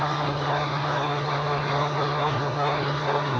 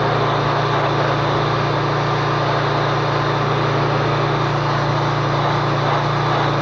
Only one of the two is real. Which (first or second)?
second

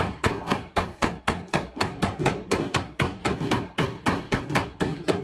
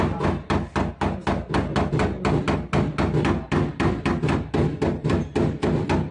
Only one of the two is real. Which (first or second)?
second